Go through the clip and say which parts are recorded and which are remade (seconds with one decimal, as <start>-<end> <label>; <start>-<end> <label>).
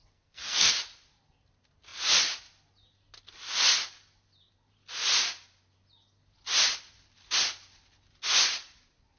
0.0-0.7 remade; 0.7-9.2 recorded